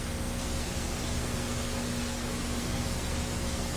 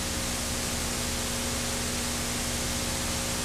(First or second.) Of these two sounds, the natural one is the second